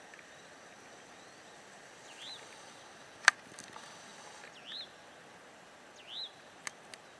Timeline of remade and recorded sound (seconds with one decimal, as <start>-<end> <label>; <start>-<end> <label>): 0.0-7.2 recorded